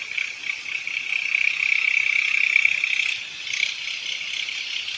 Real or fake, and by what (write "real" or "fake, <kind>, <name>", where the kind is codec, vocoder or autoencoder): real